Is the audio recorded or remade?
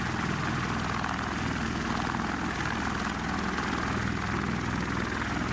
recorded